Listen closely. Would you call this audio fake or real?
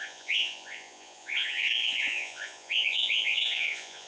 fake